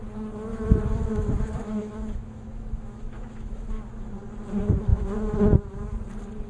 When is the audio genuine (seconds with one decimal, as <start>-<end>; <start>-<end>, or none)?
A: 0.0-0.5; 4.1-4.9; 5.4-6.5